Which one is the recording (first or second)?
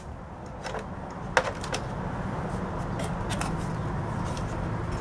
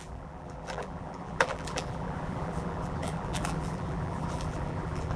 first